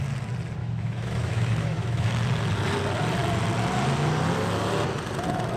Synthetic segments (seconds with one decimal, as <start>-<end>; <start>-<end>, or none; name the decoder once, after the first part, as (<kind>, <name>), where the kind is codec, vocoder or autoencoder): 0.6-2.1 (autoencoder, DAC-VAE)